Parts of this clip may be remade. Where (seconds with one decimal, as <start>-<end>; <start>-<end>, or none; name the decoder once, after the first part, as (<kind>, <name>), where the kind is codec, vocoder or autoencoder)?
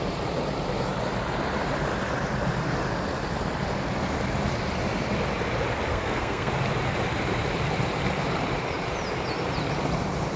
5.9-6.5 (codec, SNAC)